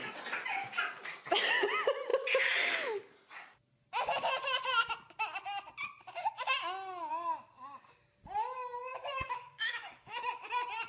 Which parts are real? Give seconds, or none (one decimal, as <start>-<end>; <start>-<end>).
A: 0.0-8.9; 10.5-10.9

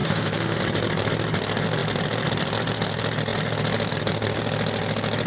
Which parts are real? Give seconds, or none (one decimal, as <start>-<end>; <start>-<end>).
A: 0.6-5.3

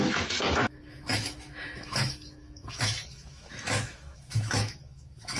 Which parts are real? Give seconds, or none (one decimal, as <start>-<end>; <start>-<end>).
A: none

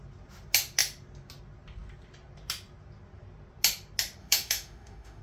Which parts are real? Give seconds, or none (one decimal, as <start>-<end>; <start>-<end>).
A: 0.0-4.2

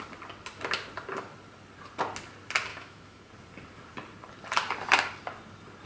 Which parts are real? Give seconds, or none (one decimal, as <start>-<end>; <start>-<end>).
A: 0.0-2.7; 3.3-5.9

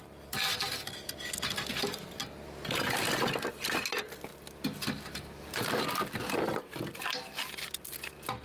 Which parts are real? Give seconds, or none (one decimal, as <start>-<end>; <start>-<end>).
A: 0.0-8.4

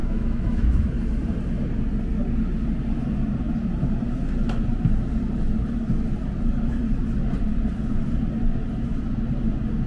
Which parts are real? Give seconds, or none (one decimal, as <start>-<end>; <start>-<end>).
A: 0.9-9.9

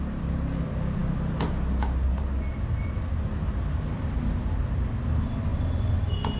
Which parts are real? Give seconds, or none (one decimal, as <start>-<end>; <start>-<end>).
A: 0.0-6.4